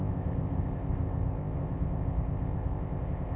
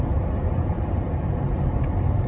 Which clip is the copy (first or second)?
first